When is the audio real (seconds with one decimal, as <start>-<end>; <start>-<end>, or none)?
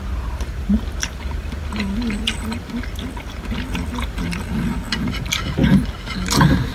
0.0-6.7